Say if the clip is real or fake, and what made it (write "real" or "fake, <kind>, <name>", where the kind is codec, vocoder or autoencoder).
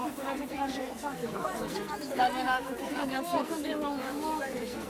fake, codec, SNAC